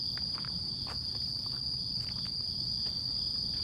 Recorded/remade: recorded